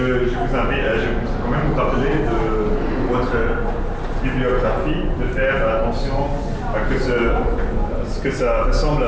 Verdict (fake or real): real